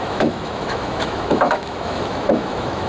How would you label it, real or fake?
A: fake